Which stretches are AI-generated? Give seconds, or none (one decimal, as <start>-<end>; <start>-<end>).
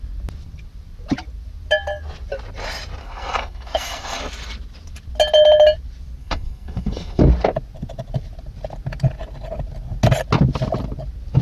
3.0-4.2; 6.2-7.2